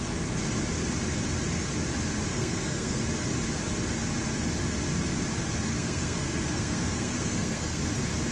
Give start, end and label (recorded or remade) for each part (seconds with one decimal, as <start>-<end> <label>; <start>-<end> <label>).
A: 0.0-2.3 recorded; 2.3-3.0 remade; 3.0-5.7 recorded; 5.7-7.8 remade; 7.8-8.3 recorded